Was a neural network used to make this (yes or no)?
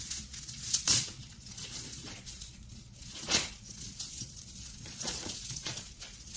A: yes